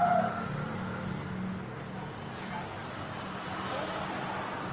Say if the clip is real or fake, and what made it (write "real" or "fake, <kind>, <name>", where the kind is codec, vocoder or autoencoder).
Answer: real